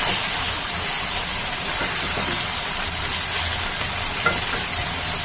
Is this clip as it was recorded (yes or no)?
yes